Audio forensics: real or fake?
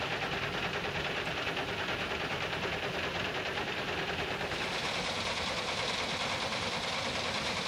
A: fake